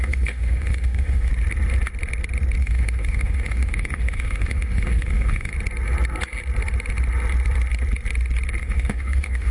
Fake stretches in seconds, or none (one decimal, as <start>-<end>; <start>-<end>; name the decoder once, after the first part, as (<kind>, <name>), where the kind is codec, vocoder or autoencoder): 0.0-1.3 (autoencoder, DAC-VAE); 2.6-5.5; 8.6-9.5